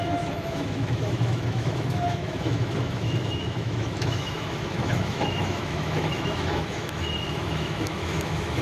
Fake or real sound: fake